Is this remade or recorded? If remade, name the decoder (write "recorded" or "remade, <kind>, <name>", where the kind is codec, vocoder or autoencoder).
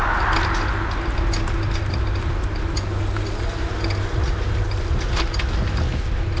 recorded